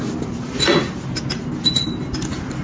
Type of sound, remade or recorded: recorded